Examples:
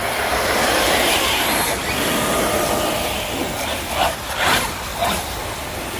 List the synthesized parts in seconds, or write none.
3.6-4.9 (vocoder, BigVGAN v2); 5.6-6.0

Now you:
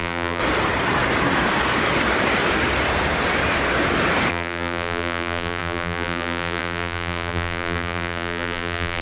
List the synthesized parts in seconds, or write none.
0.0-0.4 (vocoder, BigVGAN v2); 4.3-9.0

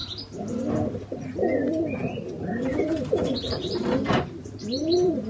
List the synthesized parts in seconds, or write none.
0.0-0.6 (vocoder, BigVGAN v2); 2.7-5.3

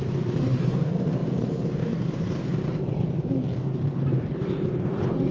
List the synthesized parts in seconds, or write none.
0.0-5.3 (vocoder, BigVGAN v2)

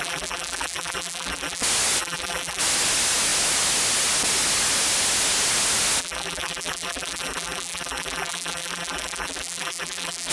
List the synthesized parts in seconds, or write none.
0.0-1.6 (vocoder, BigVGAN v2); 2.0-2.6; 6.0-10.3